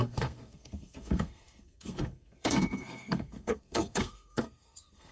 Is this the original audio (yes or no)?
no